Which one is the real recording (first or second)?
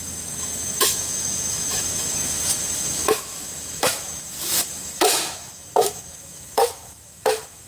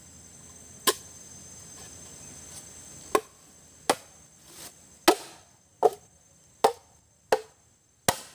second